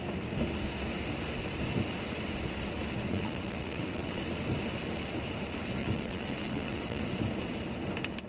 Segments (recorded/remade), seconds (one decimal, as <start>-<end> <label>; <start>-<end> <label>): 0.0-3.1 recorded; 3.1-4.2 remade; 4.2-5.8 recorded; 5.8-7.0 remade; 7.0-8.3 recorded